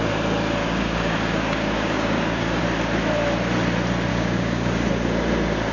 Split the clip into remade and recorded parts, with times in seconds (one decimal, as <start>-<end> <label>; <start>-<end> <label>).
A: 0.0-0.6 recorded; 0.6-2.6 remade; 2.6-4.1 recorded; 4.1-4.9 remade; 4.9-5.7 recorded